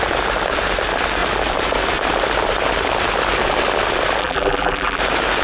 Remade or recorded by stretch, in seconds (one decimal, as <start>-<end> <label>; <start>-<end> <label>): 0.0-4.2 recorded; 4.2-5.0 remade; 5.0-5.4 recorded

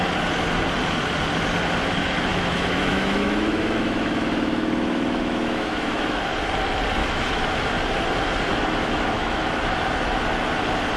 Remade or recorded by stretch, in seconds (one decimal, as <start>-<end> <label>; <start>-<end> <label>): 0.0-2.3 recorded; 2.3-6.1 remade; 6.1-7.0 recorded; 7.0-7.7 remade; 7.7-8.5 recorded; 8.5-9.7 remade; 9.7-11.0 recorded

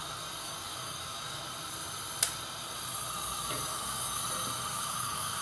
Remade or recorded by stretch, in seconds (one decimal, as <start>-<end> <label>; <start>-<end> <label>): 0.0-0.4 recorded; 0.4-1.4 remade; 1.4-3.7 recorded; 3.7-4.2 remade; 4.2-4.7 recorded; 4.7-5.4 remade

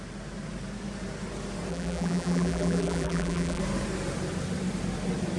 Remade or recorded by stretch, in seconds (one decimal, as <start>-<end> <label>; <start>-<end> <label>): 0.0-1.7 recorded; 1.7-3.6 remade; 3.6-5.4 recorded

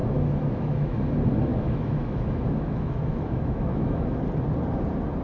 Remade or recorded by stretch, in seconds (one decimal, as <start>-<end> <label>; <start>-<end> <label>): 0.0-1.0 remade; 1.0-1.5 recorded; 1.5-4.2 remade; 4.2-5.2 recorded